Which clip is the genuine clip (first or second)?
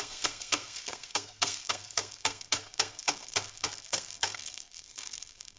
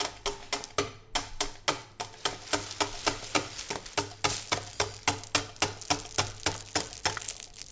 second